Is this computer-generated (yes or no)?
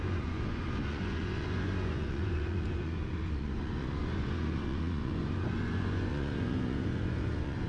yes